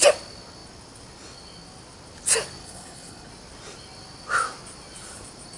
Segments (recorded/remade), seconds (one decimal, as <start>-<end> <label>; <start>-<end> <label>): 0.0-2.6 recorded; 2.6-3.3 remade; 3.3-5.6 recorded

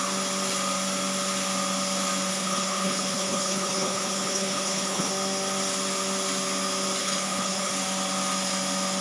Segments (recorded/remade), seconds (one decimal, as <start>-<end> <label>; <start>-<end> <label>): 0.0-2.3 recorded; 2.3-5.1 remade; 5.1-7.0 recorded; 7.0-7.7 remade; 7.7-9.0 recorded